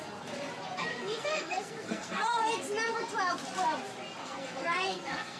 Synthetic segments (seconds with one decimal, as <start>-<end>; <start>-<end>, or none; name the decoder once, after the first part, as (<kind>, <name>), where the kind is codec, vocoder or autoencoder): 0.9-2.5 (codec, SNAC); 4.2-5.4

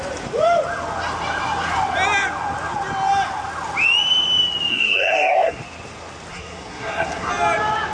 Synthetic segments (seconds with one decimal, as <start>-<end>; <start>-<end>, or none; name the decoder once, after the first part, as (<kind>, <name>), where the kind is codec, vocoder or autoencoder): 4.7-5.6 (codec, SNAC); 6.3-7.3